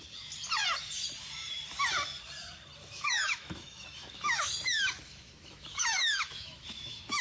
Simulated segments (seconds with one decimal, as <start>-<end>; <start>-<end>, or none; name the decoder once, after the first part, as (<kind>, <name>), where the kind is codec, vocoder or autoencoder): 2.8-7.2 (autoencoder, DAC-VAE)